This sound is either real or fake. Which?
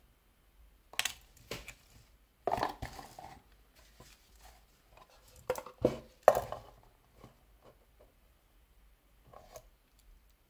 real